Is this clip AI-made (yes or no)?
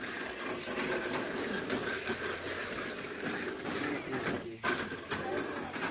no